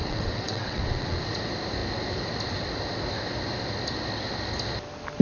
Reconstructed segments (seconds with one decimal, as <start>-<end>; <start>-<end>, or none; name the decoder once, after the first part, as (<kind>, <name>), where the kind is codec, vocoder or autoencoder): 0.0-1.2 (vocoder, WaveNeXt)